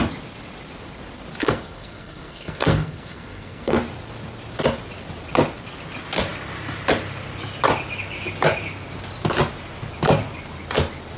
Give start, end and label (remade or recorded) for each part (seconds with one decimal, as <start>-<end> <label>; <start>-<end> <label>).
0.0-1.4 recorded; 1.4-3.8 remade; 3.8-11.2 recorded